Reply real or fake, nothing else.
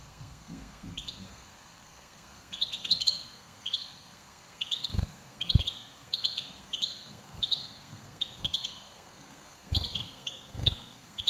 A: fake